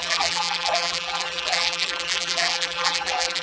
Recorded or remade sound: remade